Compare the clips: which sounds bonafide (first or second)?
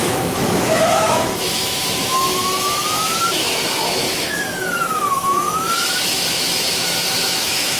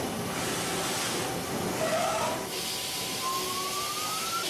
second